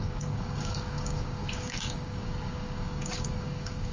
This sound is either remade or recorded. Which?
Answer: remade